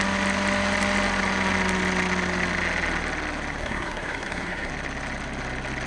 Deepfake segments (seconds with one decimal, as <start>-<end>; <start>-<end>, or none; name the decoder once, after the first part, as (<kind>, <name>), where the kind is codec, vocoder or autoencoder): 3.6-4.7 (codec, SNAC)